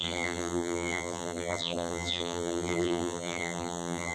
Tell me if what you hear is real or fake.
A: fake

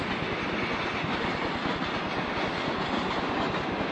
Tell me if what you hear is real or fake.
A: real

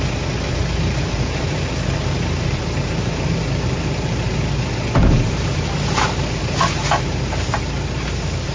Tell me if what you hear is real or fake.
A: fake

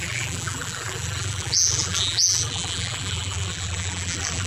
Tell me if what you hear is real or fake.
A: fake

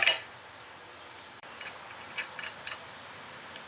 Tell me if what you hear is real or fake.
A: fake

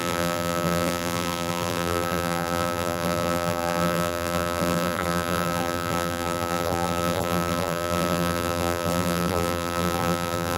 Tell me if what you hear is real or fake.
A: fake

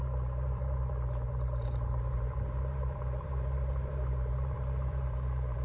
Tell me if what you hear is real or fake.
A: fake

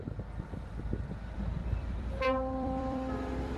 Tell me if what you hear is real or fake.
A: fake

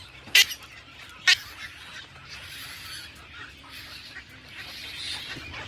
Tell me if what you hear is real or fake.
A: real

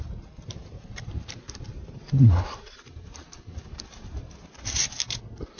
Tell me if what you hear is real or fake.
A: fake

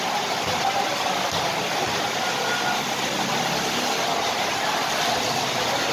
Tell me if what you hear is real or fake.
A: real